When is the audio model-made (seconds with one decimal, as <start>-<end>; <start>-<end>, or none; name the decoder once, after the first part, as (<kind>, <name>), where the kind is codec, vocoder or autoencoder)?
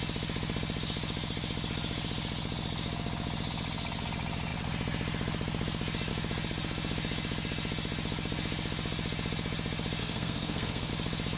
10.0-10.9 (codec, SNAC)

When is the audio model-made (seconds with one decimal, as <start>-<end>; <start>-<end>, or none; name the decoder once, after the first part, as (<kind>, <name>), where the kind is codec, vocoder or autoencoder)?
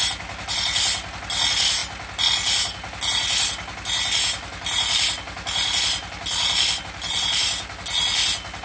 none